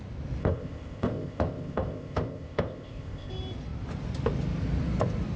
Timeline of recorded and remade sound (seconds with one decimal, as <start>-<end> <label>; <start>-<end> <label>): 0.0-0.4 recorded; 0.4-3.3 remade; 3.3-5.4 recorded